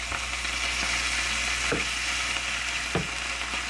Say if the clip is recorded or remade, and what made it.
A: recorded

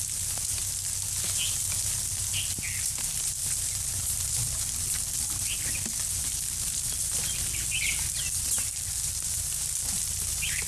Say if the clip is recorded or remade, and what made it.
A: recorded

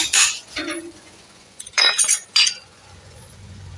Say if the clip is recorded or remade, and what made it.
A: remade, vocoder, Vocos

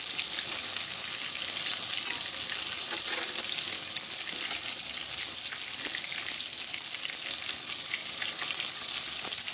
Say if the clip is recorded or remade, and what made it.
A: recorded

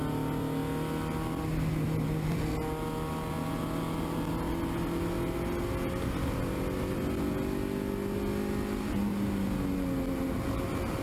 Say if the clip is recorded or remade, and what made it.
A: recorded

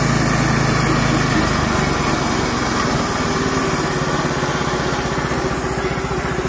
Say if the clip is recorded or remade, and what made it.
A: recorded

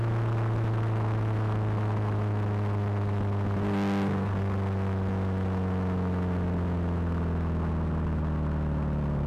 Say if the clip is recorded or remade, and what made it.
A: recorded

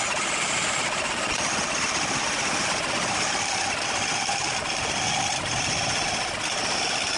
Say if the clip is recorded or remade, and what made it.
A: recorded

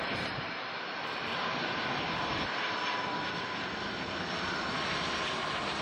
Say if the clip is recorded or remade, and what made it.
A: remade, vocoder, BigVGAN v2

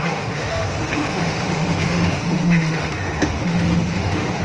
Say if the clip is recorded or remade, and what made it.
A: remade, autoencoder, DAC-VAE